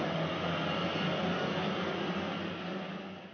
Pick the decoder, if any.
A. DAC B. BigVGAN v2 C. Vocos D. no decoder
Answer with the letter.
D